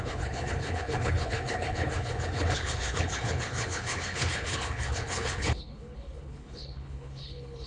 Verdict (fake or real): fake